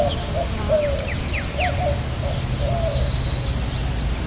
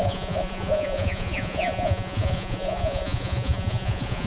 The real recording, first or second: first